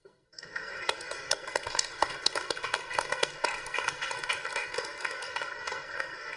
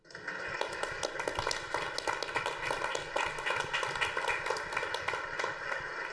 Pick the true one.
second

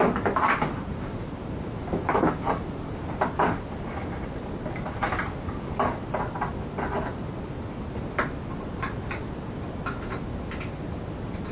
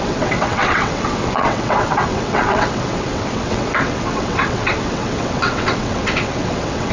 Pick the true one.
first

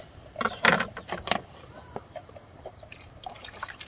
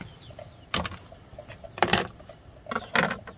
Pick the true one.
second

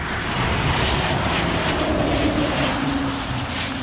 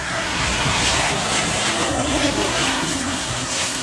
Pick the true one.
first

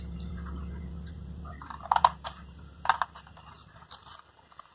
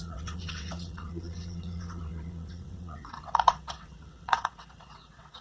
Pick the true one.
first